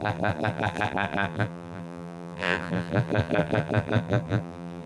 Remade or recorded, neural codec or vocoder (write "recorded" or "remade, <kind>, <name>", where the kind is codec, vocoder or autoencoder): remade, vocoder, BigVGAN v2